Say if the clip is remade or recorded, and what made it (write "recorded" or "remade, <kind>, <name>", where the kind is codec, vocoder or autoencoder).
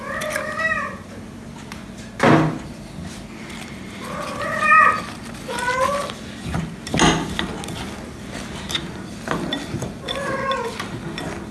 recorded